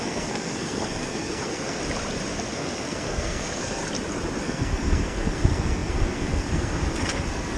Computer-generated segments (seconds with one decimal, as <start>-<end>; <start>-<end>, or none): 0.0-1.8; 2.5-3.8; 4.4-7.6